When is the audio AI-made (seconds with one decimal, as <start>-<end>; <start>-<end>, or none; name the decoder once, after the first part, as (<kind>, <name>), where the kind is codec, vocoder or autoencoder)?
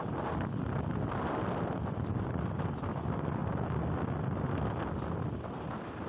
none